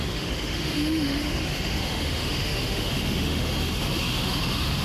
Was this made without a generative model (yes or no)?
no